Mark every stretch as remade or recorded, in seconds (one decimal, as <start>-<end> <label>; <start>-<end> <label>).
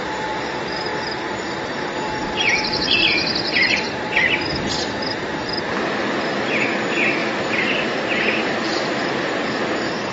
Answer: 0.0-7.2 recorded; 7.2-9.3 remade; 9.3-10.1 recorded